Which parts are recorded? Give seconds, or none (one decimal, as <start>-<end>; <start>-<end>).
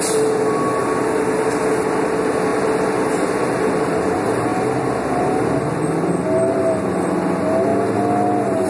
0.0-8.7